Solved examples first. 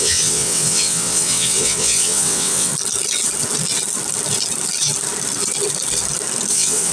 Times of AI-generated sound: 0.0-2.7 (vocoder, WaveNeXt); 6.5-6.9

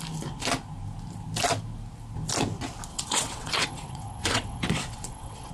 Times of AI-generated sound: 2.9-5.5 (vocoder, WaveNeXt)

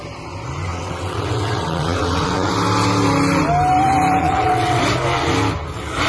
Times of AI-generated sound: 0.7-2.5 (vocoder, WaveNeXt); 4.2-4.8

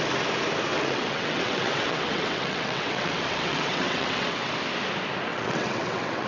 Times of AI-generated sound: 0.7-4.5 (vocoder, WaveNeXt); 5.3-6.3

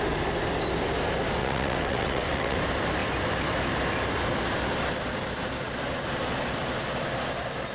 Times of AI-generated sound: 1.4-2.6 (vocoder, WaveNeXt)

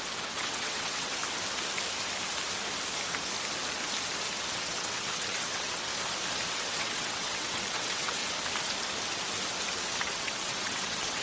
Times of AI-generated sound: 0.0-1.2 (vocoder, WaveNeXt); 4.5-5.9; 6.5-8.2; 9.8-11.2

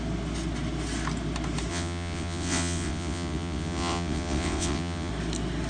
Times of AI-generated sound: 1.7-5.1 (vocoder, WaveNeXt)